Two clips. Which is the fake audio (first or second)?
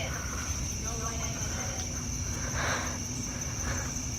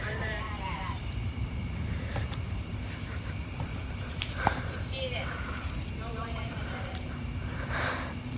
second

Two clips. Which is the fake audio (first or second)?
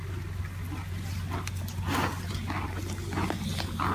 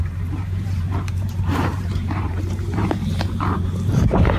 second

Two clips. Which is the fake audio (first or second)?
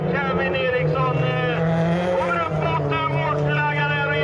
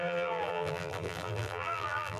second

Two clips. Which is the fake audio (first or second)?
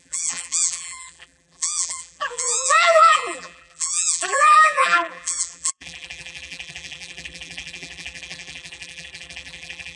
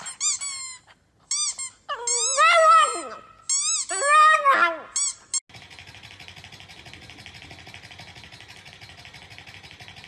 first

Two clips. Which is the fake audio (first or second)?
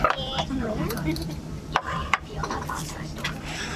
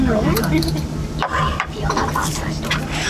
first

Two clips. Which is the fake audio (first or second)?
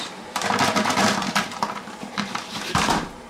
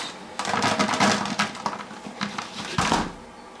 first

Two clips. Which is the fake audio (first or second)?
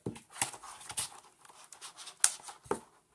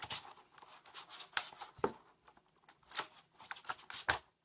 second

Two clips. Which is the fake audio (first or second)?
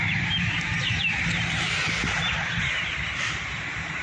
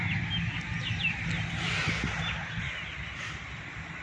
first